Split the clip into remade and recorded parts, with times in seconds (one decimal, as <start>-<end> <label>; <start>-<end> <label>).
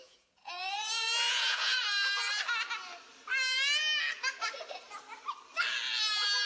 0.0-1.8 remade; 1.8-6.5 recorded